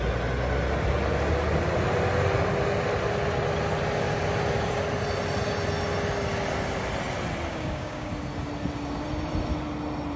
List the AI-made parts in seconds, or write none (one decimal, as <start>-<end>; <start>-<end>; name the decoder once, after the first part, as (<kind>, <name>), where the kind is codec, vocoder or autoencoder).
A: 7.5-8.1 (codec, DAC)